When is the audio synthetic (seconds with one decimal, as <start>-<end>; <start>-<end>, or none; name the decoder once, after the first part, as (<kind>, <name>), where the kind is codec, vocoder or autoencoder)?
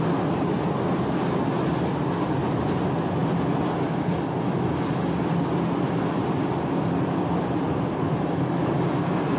none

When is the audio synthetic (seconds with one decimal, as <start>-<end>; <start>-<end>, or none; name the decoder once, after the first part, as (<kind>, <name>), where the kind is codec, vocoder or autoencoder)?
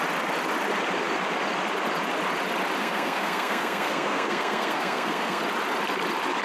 2.8-5.4 (codec, SNAC)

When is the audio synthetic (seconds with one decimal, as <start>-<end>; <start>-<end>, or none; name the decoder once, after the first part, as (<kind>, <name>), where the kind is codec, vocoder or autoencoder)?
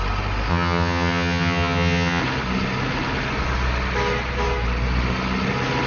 0.5-2.2 (vocoder, HiFi-GAN)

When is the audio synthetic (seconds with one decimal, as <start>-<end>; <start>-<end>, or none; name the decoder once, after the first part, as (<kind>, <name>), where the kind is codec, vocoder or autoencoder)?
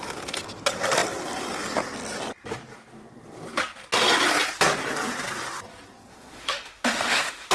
6.1-7.5 (autoencoder, DAC-VAE)